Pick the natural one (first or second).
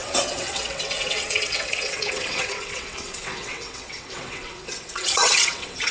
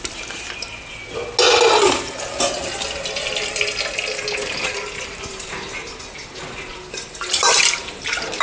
second